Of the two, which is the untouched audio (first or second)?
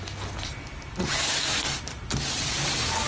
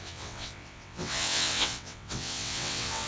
first